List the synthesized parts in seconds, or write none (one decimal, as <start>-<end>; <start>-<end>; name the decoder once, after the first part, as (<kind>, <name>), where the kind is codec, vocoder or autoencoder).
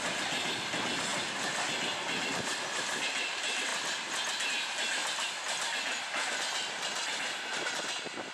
1.1-1.9 (vocoder, BigVGAN v2); 5.0-7.9